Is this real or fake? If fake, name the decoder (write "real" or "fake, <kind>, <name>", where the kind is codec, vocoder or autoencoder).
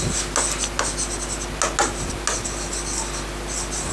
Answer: real